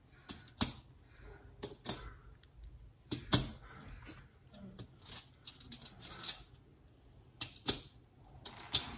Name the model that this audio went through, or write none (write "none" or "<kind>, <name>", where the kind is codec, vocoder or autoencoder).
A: none